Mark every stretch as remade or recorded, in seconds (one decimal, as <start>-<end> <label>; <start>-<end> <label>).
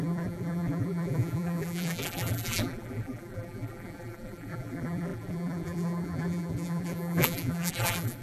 0.0-8.2 remade